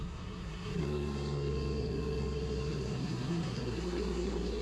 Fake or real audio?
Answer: fake